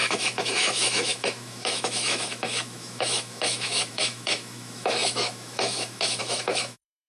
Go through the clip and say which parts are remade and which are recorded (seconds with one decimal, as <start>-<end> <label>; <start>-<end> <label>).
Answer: 0.0-7.1 remade